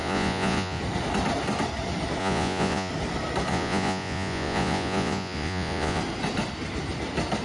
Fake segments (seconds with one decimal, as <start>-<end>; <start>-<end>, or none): 0.0-0.8; 2.2-2.9; 3.5-6.0